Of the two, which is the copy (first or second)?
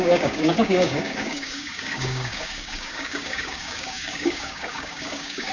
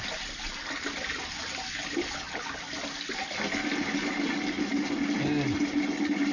first